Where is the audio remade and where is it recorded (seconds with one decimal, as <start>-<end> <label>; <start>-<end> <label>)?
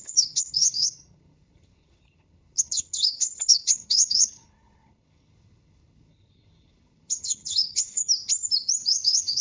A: 0.0-8.0 remade; 8.0-8.9 recorded; 8.9-9.4 remade